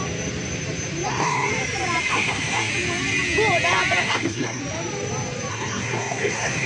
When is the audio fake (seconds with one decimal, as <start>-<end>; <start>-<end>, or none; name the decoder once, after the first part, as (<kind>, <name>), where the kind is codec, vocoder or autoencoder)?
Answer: 1.1-1.5 (codec, SNAC); 2.1-2.7; 4.0-4.6; 5.5-6.7